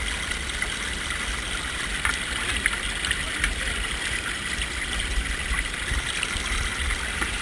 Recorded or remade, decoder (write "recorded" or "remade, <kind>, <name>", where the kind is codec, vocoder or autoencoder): recorded